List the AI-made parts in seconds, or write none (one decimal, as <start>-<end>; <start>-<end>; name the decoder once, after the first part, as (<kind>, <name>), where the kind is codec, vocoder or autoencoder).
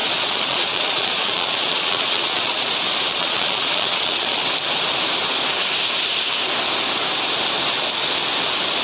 0.0-2.7 (vocoder, Vocos); 3.1-4.4